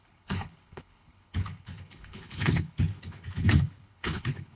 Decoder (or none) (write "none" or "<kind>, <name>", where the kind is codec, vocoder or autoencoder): codec, HILCodec